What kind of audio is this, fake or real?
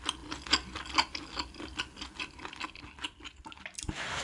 real